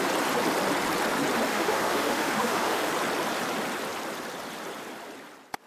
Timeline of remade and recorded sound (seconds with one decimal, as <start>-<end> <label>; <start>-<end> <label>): 0.0-1.5 recorded; 1.5-2.9 remade; 2.9-5.7 recorded